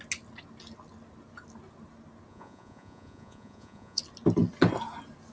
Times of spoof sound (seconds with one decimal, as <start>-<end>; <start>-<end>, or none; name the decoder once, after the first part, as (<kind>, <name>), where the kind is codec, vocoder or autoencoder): 2.3-4.0 (vocoder, Vocos)